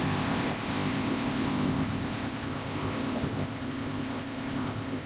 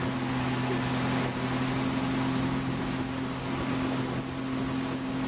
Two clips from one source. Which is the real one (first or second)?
second